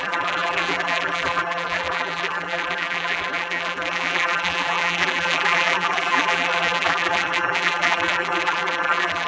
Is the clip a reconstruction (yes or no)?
yes